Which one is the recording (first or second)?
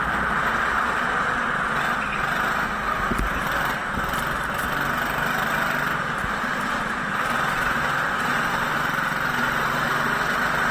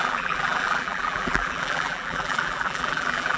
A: first